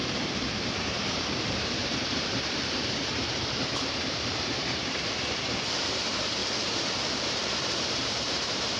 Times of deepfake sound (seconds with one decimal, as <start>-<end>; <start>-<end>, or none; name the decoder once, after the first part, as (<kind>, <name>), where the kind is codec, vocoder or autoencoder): 0.0-6.4 (vocoder, BigVGAN v2); 7.0-8.8